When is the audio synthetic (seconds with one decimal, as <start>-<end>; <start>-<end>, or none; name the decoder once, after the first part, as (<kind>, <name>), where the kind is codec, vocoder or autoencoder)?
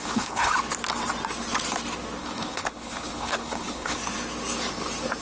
0.0-0.5 (codec, HILCodec); 2.2-4.0